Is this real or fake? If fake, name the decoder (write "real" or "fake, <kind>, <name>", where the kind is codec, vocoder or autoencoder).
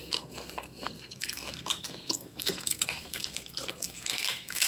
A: fake, codec, SNAC